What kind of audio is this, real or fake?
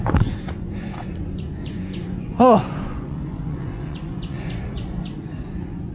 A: fake